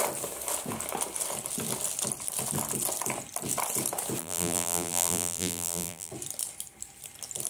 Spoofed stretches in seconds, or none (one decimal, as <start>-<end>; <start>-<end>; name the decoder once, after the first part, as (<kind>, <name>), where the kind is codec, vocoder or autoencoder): 4.2-6.1 (vocoder, BigVGAN v2)